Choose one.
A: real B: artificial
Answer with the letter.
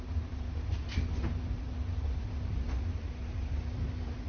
B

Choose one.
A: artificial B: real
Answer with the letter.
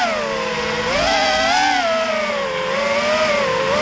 B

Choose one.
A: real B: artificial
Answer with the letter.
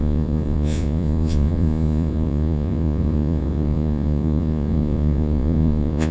B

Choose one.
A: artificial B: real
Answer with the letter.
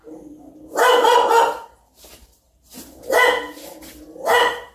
A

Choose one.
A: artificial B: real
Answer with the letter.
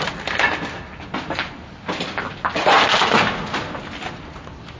B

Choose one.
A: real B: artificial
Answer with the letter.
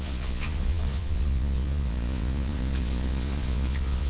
B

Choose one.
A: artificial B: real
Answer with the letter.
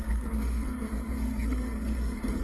A